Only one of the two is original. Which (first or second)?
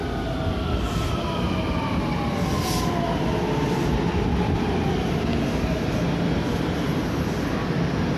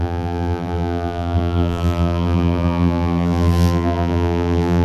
first